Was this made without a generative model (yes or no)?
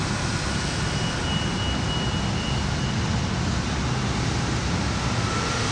yes